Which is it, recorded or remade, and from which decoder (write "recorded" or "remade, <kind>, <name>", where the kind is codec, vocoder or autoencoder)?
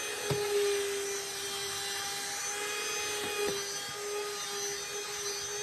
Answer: recorded